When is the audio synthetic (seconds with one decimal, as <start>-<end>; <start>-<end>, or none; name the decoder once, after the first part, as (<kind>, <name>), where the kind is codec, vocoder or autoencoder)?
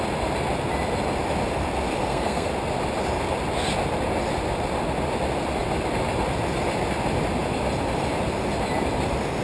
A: 2.0-2.5 (codec, SNAC)